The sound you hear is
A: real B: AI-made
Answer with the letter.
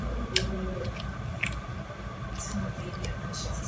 A